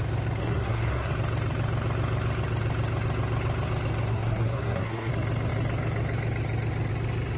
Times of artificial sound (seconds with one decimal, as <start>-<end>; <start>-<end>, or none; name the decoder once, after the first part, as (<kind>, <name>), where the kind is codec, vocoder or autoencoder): 0.4-1.1 (codec, SNAC); 4.1-5.1